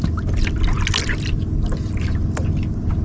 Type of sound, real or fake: real